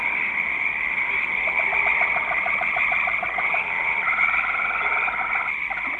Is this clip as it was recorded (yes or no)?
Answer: yes